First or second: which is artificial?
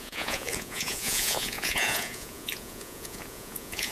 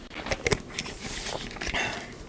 first